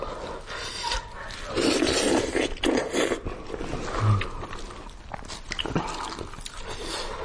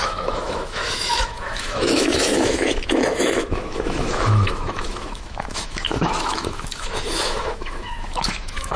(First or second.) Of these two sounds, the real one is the first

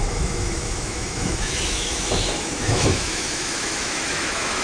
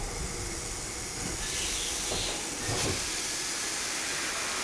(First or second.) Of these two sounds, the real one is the second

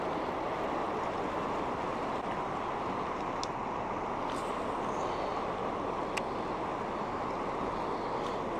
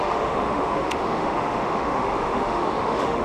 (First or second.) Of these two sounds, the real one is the first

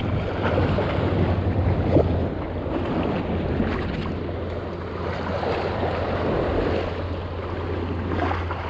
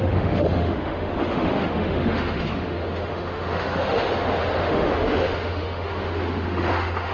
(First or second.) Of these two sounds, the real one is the first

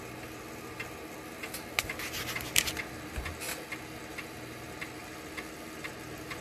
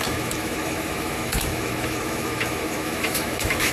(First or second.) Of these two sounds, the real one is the first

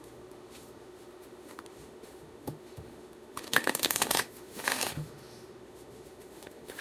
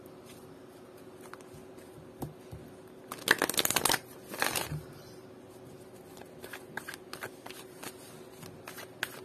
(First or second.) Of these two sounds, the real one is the second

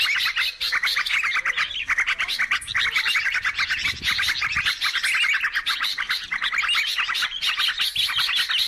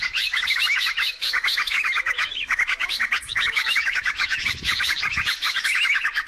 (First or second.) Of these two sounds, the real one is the first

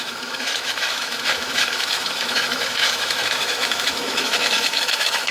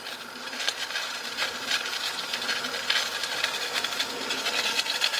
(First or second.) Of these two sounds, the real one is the second